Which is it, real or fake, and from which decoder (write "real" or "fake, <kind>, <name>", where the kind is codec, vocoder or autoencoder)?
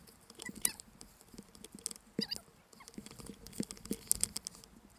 real